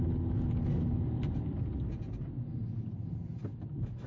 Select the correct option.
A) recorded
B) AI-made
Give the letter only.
A